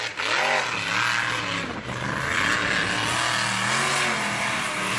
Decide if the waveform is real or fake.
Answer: real